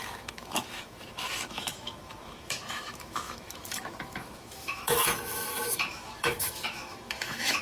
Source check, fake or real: fake